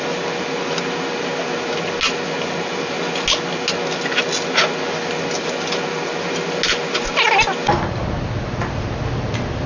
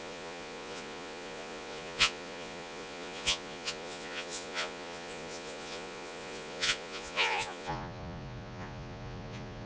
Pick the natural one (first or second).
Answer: first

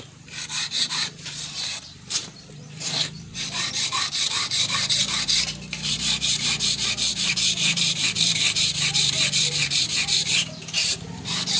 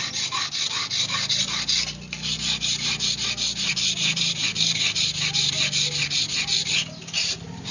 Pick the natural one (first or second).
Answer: second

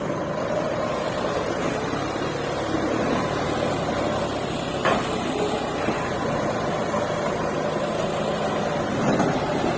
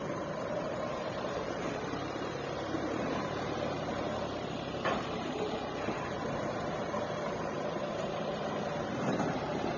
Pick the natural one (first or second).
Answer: first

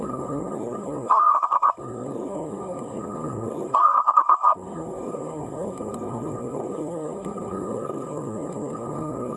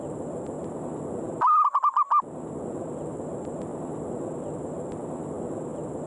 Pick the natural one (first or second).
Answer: second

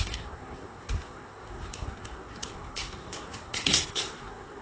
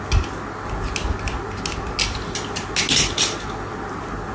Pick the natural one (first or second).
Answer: second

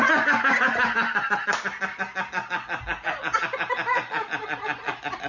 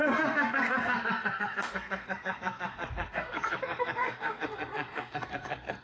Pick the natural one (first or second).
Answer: first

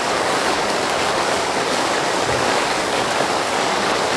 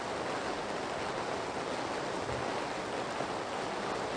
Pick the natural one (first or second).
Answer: second